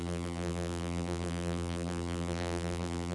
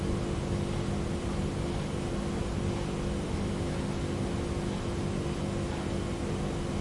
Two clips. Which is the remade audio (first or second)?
first